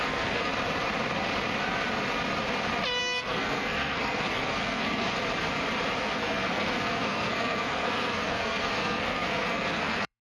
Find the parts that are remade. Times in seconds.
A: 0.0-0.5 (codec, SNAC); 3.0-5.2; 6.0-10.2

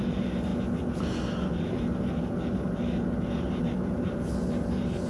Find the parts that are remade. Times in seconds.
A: none

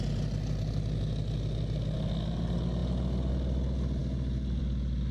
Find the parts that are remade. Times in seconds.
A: none

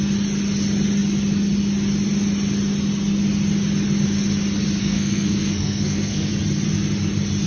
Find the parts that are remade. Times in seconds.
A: 4.8-6.3 (codec, SNAC)

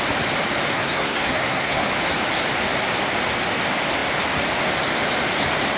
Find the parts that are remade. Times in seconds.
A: 0.7-1.9 (codec, SNAC)

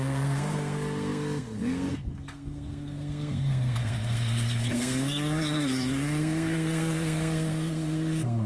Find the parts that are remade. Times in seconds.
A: 0.0-8.5 (codec, SNAC)

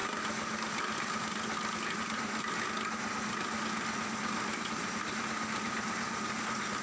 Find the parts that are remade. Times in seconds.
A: none

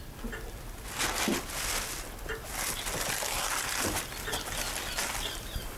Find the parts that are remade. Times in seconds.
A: none